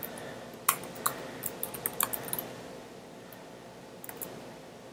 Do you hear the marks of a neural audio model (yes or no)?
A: no